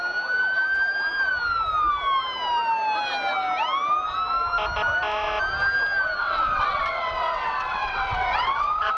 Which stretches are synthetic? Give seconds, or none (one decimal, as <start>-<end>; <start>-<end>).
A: 6.2-9.0

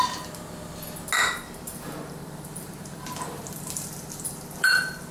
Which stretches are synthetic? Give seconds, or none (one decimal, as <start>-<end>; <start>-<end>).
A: 1.7-5.1

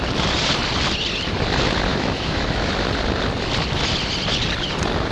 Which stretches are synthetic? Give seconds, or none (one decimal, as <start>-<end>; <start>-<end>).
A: 1.9-2.7

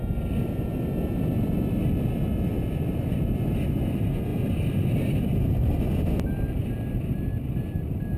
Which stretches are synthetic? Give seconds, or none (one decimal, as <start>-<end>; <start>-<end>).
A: none

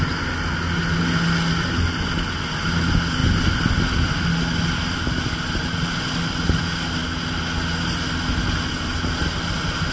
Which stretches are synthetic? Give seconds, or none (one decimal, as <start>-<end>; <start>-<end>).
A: none

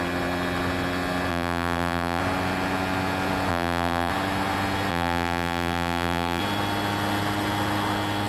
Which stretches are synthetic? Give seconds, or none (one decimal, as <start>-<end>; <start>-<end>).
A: 1.3-2.2; 3.5-4.1; 4.9-6.4

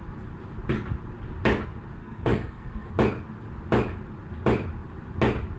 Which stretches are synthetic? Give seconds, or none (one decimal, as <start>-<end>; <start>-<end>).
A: 2.0-2.9